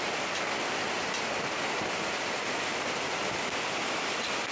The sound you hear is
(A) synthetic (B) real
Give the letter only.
B